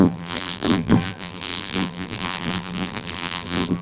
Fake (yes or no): yes